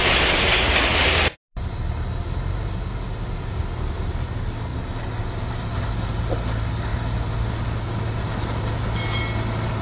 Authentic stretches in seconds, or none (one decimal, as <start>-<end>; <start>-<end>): 0.0-9.8